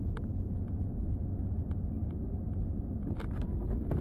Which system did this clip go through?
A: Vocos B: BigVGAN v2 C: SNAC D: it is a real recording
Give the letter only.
B